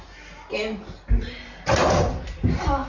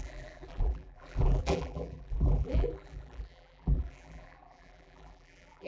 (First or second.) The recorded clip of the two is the first